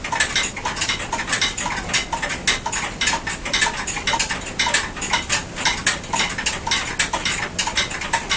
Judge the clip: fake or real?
real